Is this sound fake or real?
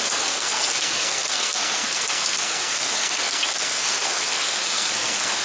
fake